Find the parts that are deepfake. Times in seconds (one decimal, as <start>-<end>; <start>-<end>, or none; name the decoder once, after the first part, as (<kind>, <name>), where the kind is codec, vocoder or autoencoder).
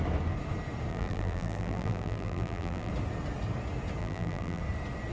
0.9-2.9 (vocoder, BigVGAN v2); 4.0-4.6